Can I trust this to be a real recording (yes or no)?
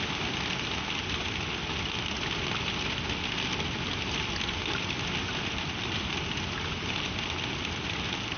yes